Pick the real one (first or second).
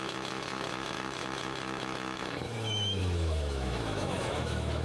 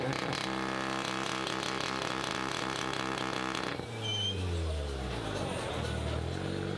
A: second